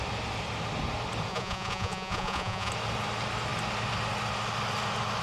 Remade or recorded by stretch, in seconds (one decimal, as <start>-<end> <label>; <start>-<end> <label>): 0.0-1.3 recorded; 1.3-2.7 remade; 2.7-5.2 recorded